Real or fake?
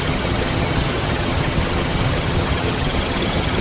fake